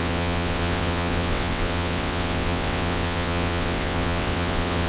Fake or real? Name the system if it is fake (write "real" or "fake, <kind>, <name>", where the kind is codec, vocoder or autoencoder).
fake, vocoder, WaveNeXt